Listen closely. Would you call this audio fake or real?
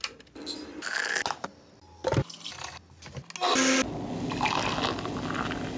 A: real